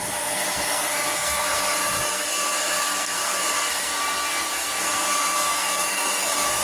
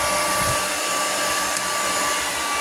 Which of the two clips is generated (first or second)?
first